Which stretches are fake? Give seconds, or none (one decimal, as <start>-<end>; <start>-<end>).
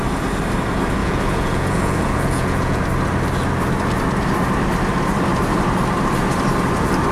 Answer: 1.0-2.8